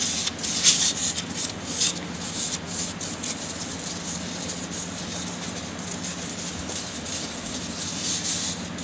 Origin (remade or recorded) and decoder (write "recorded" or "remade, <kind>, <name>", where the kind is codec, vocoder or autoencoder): recorded